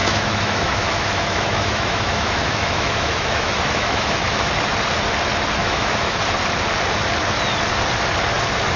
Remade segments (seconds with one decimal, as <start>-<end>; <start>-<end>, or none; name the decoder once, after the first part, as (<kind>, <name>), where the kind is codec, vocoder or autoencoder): 0.0-4.5 (autoencoder, DAC-VAE); 5.6-6.2